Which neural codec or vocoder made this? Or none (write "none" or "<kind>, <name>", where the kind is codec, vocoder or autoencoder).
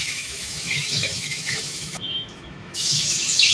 autoencoder, DAC-VAE